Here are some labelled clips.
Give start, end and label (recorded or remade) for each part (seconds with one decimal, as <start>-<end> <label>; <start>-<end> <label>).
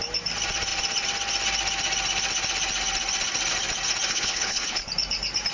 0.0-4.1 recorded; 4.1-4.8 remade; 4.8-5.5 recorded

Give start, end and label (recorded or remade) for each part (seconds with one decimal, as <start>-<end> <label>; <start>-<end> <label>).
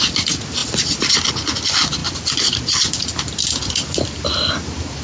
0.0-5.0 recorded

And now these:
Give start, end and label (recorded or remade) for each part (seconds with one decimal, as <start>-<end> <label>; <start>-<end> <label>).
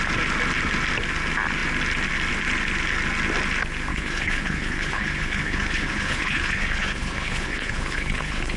0.0-3.9 recorded; 3.9-8.6 remade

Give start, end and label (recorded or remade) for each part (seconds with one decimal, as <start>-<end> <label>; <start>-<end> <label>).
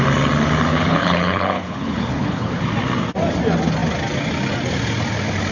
0.0-0.7 recorded; 0.7-2.6 remade; 2.6-5.5 recorded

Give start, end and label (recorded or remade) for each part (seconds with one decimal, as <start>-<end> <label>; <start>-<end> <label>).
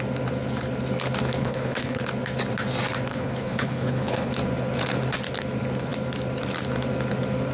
0.0-1.4 recorded; 1.4-2.0 remade; 2.0-3.1 recorded; 3.1-4.3 remade; 4.3-7.5 recorded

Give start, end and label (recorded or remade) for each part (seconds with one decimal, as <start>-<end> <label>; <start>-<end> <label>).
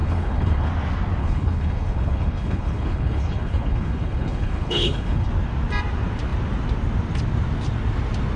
0.0-0.7 remade; 0.7-1.2 recorded; 1.2-5.3 remade; 5.3-8.4 recorded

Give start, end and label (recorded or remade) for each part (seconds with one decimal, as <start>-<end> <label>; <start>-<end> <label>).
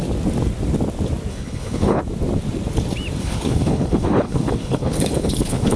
0.0-1.3 recorded; 1.3-2.0 remade; 2.0-3.2 recorded; 3.2-5.8 remade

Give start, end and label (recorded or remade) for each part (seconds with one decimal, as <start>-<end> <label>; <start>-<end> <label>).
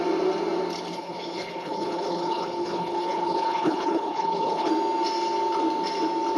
0.0-0.9 recorded; 0.9-4.7 remade; 4.7-6.4 recorded